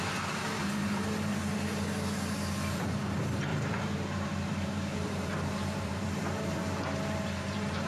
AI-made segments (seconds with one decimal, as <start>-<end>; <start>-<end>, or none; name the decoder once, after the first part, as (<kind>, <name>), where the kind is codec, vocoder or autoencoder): 0.6-1.4 (vocoder, BigVGAN v2); 3.5-7.9